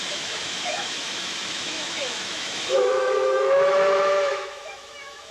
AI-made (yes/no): yes